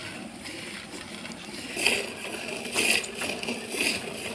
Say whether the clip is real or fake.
real